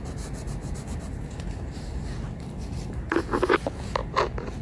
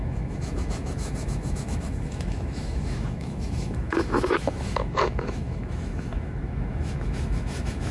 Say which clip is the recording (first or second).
first